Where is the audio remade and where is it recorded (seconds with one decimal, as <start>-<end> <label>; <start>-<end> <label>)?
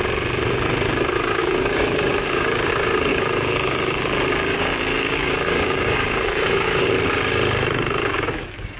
0.0-1.4 recorded; 1.4-2.7 remade; 2.7-3.1 recorded; 3.1-6.9 remade; 6.9-8.0 recorded; 8.0-8.8 remade